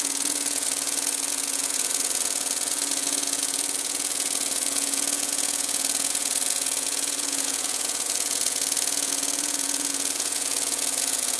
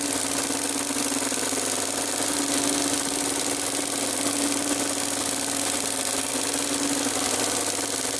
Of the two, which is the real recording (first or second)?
second